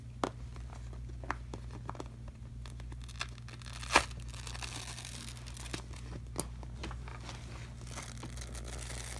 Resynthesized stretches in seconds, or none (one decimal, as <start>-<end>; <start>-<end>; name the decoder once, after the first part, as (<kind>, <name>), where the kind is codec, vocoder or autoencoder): none